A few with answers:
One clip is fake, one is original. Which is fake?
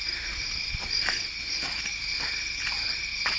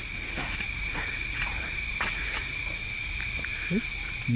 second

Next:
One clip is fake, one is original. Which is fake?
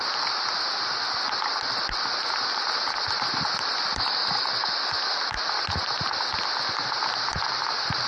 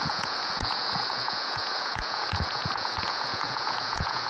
second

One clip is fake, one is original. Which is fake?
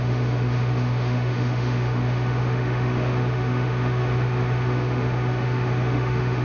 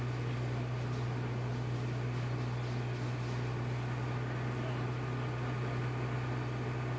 first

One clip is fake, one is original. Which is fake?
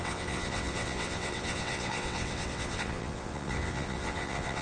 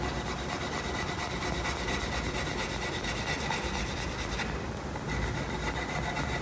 first